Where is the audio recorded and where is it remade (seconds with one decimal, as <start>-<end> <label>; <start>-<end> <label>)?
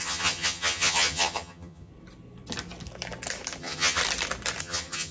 0.0-1.9 remade; 1.9-3.6 recorded; 3.6-4.0 remade; 4.0-4.6 recorded; 4.6-5.1 remade